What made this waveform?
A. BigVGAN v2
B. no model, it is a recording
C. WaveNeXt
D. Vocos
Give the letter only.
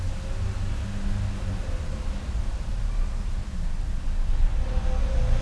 B